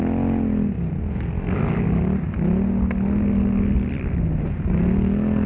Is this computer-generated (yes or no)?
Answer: no